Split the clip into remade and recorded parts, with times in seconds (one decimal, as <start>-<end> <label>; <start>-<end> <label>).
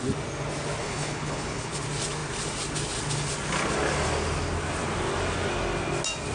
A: 0.0-0.8 recorded; 0.8-1.7 remade; 1.7-6.3 recorded